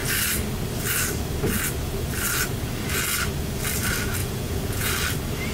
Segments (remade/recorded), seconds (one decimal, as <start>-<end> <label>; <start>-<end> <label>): 0.0-4.2 recorded; 4.2-4.9 remade; 4.9-5.5 recorded